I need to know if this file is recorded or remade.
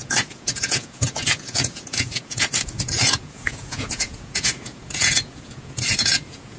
remade